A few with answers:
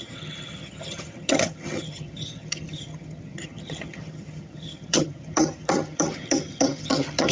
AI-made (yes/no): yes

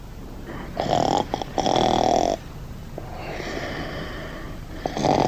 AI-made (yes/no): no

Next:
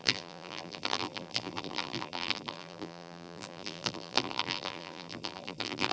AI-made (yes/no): yes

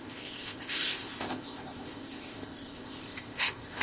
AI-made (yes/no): yes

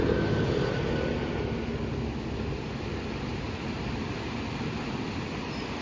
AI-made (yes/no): no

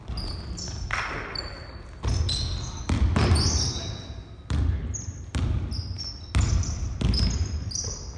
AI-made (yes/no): no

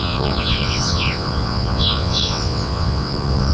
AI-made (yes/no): yes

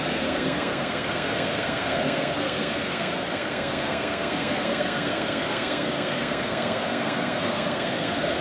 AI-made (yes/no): yes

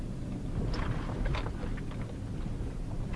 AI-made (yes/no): no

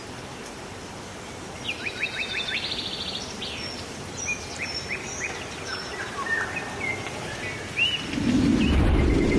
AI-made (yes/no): no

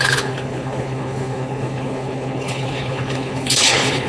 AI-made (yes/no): yes